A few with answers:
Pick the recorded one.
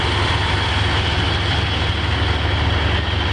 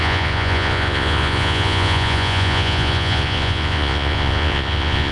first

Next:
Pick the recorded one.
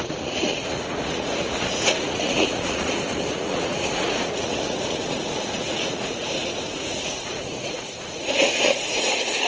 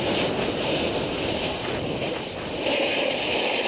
second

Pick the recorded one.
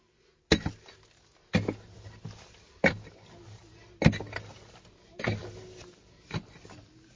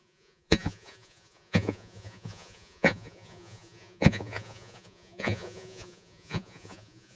first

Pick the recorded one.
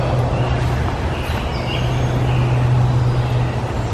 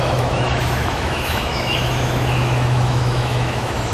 first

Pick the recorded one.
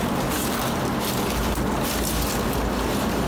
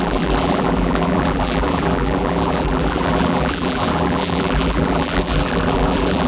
first